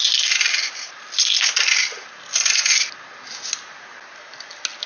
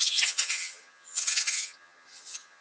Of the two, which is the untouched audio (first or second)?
first